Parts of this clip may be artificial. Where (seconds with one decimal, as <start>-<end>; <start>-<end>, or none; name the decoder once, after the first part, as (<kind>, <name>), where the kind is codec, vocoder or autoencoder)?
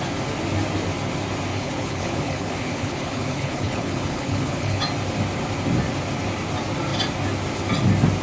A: 1.5-4.8 (codec, HILCodec)